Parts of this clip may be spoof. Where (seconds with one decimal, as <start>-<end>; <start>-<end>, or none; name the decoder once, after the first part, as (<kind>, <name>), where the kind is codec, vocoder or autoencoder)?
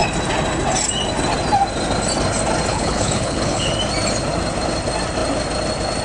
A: 2.7-3.7 (codec, HILCodec)